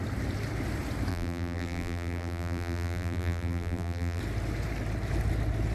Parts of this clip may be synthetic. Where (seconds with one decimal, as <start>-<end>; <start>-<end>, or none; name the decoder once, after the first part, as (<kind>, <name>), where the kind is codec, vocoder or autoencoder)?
1.1-4.2 (vocoder, BigVGAN v2)